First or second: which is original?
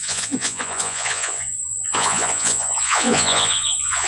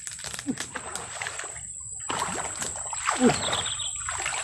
second